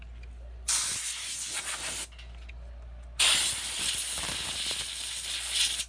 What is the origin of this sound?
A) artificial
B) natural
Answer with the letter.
B